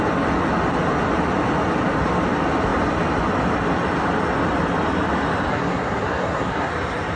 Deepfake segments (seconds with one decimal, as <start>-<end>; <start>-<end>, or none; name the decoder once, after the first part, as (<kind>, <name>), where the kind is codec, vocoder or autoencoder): 5.5-6.7 (codec, SNAC)